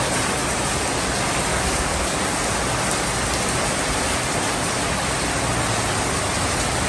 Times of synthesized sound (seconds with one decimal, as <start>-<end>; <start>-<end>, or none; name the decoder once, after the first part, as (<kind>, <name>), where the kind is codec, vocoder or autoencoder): 1.5-2.2 (codec, DAC)